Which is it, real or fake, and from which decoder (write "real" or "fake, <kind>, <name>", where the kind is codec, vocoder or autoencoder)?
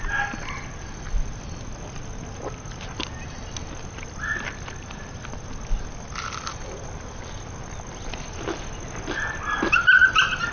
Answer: real